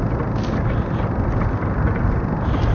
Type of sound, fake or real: real